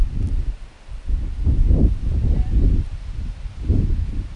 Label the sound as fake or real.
real